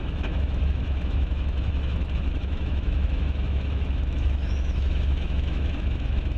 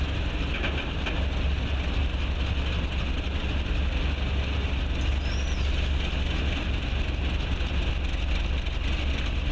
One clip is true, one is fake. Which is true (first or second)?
second